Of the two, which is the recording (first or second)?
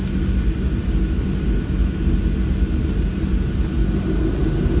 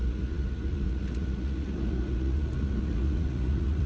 first